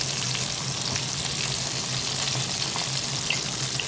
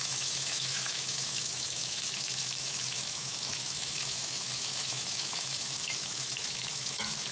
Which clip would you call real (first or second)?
first